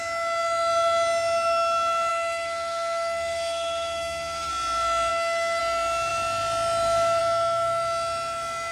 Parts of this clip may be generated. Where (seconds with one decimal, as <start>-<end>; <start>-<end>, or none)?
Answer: 2.1-4.5; 5.1-5.6